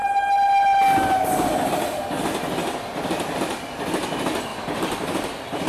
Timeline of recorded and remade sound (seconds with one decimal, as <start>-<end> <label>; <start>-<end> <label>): 0.0-4.5 recorded; 4.5-5.7 remade